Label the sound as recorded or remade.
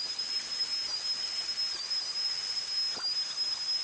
recorded